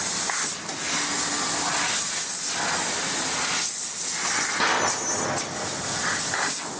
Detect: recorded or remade recorded